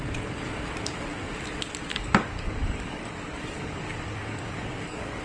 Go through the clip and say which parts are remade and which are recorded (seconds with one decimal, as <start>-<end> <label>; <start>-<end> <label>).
0.0-1.9 recorded; 1.9-5.2 remade